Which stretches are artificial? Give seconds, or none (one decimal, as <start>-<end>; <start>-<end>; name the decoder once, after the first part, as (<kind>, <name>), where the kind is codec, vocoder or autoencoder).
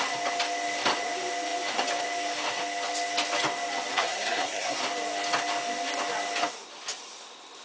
3.9-4.8 (codec, SNAC)